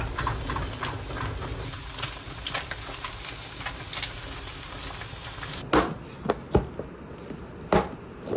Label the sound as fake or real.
real